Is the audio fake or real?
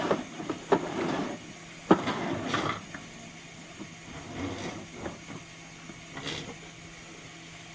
real